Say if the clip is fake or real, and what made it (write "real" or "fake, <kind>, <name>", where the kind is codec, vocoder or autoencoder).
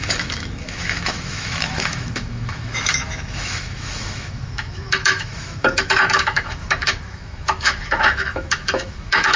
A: fake, autoencoder, DAC-VAE